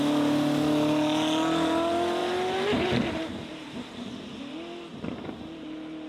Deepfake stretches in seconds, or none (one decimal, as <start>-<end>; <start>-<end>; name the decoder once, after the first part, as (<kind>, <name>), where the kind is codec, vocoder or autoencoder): 2.2-4.1 (vocoder, BigVGAN v2); 4.9-6.1